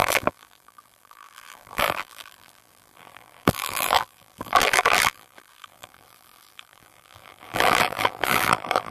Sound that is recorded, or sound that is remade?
remade